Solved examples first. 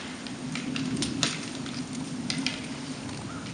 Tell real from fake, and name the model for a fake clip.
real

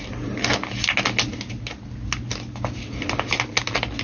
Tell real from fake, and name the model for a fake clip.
real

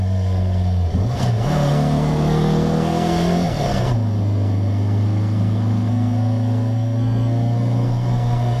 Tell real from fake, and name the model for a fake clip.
fake, codec, SNAC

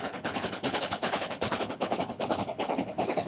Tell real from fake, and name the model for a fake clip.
fake, codec, HILCodec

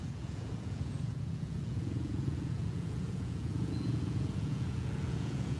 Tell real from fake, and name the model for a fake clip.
fake, vocoder, Vocos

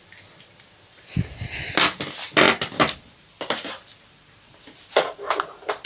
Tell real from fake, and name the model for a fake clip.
real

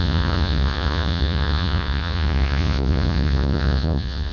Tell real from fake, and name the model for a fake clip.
fake, vocoder, Vocos